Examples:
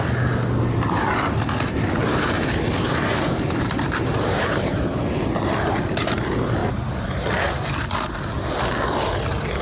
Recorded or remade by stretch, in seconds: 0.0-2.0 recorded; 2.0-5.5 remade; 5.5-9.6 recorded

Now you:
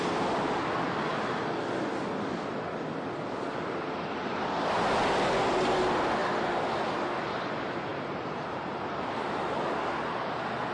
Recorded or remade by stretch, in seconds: 0.0-7.9 recorded; 7.9-9.4 remade; 9.4-10.7 recorded

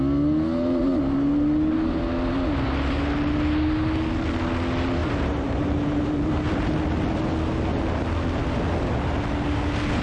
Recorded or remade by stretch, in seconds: 0.0-5.0 recorded; 5.0-6.7 remade; 6.7-10.0 recorded

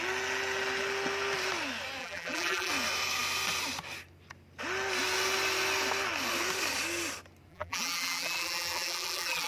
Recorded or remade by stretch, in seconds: 0.0-2.0 recorded; 2.0-2.7 remade; 2.7-7.5 recorded; 7.5-9.5 remade

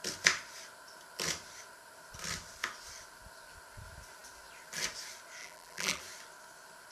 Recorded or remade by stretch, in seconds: 0.0-5.4 recorded; 5.4-6.0 remade; 6.0-6.9 recorded

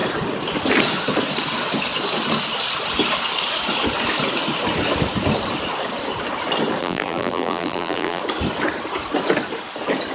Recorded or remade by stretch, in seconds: 0.0-6.8 recorded; 6.8-8.2 remade; 8.2-10.1 recorded

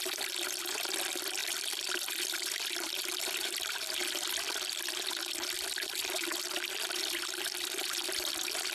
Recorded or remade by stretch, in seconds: 0.0-4.0 remade; 4.0-7.8 recorded; 7.8-8.7 remade